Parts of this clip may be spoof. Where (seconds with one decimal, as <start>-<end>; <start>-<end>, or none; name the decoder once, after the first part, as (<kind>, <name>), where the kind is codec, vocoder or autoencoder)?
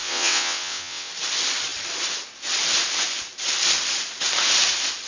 0.0-1.1 (vocoder, WaveNeXt)